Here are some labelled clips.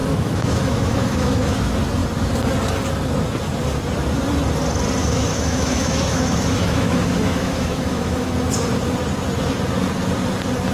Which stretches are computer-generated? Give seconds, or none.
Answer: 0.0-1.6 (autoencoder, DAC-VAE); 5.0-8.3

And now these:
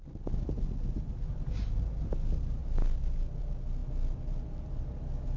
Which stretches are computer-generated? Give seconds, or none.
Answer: none

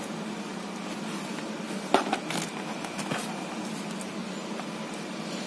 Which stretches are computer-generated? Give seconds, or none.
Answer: none